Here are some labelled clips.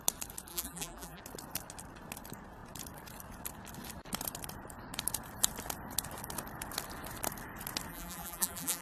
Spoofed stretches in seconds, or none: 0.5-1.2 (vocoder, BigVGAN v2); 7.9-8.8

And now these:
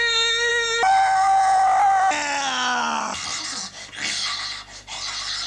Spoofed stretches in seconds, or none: none

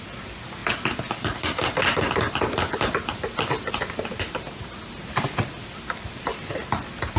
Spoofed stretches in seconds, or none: none

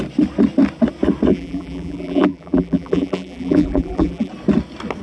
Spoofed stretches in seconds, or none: 1.3-4.3 (vocoder, BigVGAN v2)

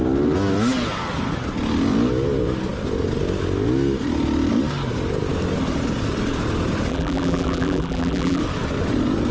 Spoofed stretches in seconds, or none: 6.9-8.4 (vocoder, BigVGAN v2)

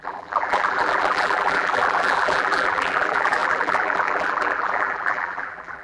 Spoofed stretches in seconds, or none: 0.0-5.8 (vocoder, BigVGAN v2)

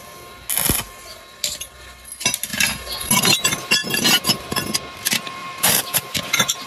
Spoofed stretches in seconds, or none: 2.5-3.1 (vocoder, BigVGAN v2); 3.8-4.6; 5.4-6.7

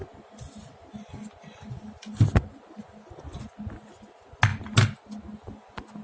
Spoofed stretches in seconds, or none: none